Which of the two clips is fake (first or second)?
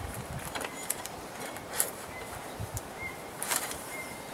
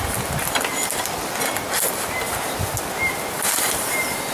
first